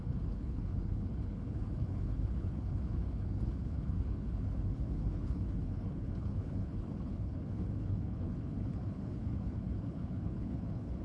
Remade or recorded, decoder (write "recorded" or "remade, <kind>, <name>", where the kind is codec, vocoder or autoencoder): remade, codec, HILCodec